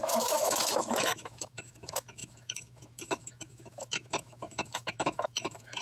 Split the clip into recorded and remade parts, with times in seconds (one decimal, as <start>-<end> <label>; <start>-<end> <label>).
0.0-5.8 remade